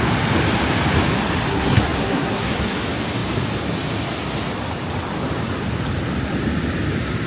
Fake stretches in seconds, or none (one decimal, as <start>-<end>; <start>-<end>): 1.5-2.8